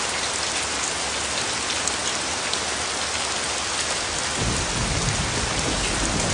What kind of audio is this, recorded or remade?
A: recorded